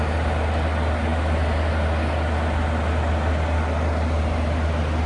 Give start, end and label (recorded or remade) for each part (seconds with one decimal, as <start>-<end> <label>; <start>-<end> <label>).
0.0-5.1 recorded